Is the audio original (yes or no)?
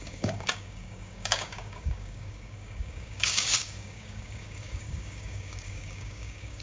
no